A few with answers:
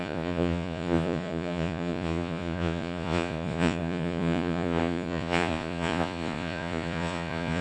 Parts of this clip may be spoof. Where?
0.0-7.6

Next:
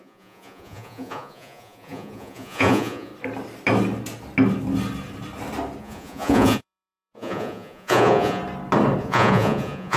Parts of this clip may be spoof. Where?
0.0-3.1; 5.8-8.4; 9.0-10.0

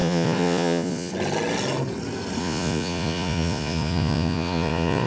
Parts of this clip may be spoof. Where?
0.0-1.1; 2.4-5.1

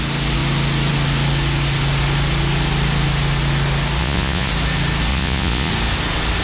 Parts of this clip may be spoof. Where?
4.0-4.5; 5.1-5.7

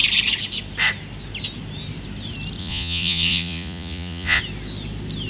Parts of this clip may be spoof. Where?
2.6-4.4

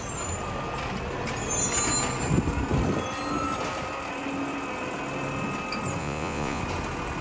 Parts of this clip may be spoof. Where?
6.0-6.6

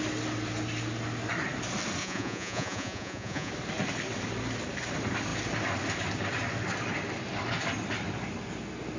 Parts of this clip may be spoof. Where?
2.0-3.5

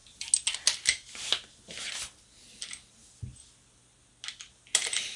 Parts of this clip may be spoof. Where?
none